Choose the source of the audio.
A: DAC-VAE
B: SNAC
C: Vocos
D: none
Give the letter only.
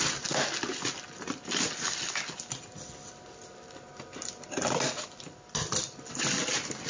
D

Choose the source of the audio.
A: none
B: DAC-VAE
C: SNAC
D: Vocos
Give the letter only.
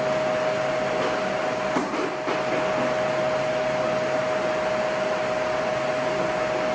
A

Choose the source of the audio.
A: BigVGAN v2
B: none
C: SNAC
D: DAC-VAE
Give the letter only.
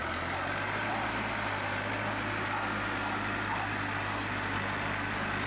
B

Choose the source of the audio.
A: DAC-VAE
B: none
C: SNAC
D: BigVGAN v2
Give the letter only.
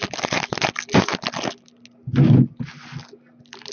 B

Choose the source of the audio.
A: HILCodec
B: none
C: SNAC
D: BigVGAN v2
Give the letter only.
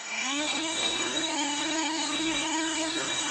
C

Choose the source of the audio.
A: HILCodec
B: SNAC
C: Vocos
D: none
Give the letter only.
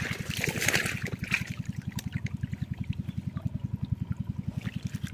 D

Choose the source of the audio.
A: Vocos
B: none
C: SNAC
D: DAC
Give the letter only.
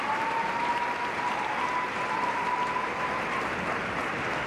B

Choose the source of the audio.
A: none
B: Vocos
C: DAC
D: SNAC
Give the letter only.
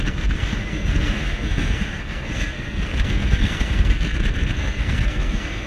D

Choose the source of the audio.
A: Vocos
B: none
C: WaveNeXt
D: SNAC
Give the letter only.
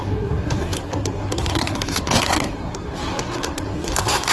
D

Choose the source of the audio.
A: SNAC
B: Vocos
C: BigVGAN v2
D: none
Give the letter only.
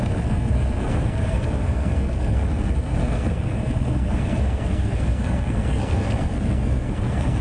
A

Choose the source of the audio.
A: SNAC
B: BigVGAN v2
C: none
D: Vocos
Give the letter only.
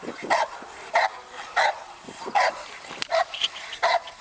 C